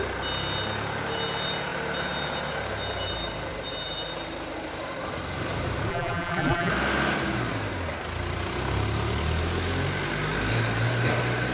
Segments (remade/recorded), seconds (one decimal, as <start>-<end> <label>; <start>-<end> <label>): 0.0-5.9 recorded; 5.9-6.7 remade; 6.7-11.5 recorded